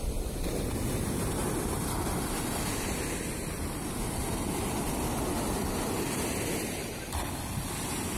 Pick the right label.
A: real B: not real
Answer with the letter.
A